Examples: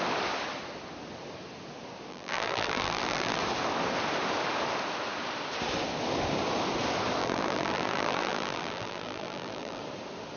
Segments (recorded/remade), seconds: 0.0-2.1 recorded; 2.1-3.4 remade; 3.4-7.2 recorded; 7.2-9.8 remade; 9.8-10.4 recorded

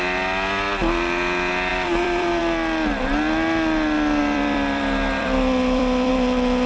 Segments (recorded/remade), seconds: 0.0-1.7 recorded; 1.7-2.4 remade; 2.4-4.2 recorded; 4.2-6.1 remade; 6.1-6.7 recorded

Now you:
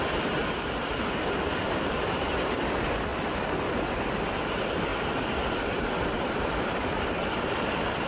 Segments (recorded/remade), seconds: 0.0-0.4 recorded; 0.4-1.1 remade; 1.1-4.9 recorded; 4.9-8.1 remade

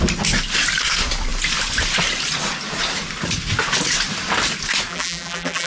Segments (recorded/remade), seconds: 0.0-4.9 recorded; 4.9-5.7 remade

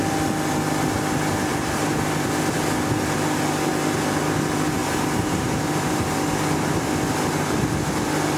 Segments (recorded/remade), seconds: 0.0-1.5 recorded; 1.5-2.0 remade; 2.0-4.8 recorded; 4.8-6.0 remade; 6.0-8.4 recorded

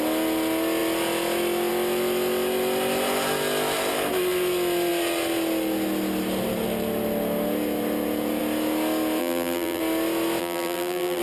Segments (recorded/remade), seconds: 0.0-9.2 recorded; 9.2-9.8 remade; 9.8-10.4 recorded; 10.4-11.2 remade